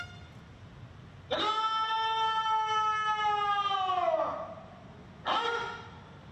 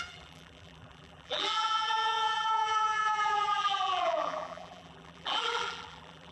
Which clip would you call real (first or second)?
first